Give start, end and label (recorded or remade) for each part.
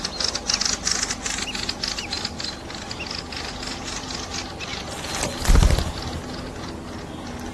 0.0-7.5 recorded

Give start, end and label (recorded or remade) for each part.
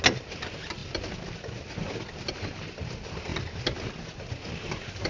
0.0-5.1 recorded